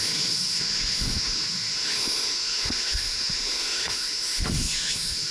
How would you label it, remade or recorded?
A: remade